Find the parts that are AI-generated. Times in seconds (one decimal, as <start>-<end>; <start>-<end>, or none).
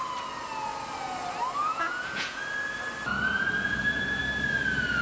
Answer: 1.6-2.4; 3.3-4.2